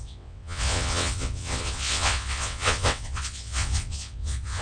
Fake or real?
fake